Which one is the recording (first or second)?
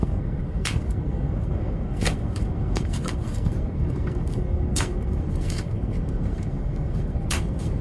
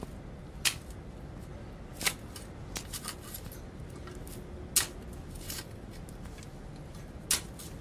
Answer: second